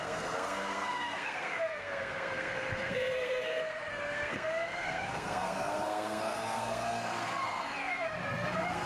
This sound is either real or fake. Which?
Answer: fake